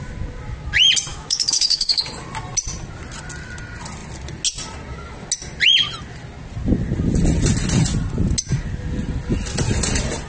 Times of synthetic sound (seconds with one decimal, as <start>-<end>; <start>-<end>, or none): 1.1-2.0